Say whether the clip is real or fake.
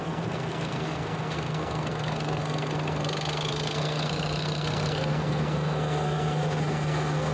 fake